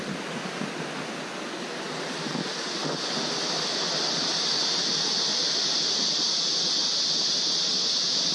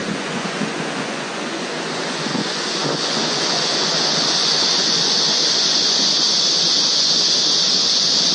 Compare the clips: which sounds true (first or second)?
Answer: first